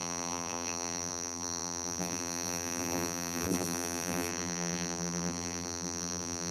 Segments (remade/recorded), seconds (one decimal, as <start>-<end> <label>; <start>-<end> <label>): 0.0-6.5 remade